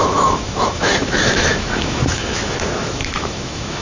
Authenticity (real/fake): fake